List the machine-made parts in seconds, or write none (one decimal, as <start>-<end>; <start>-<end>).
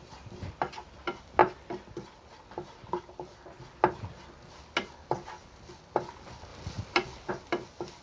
none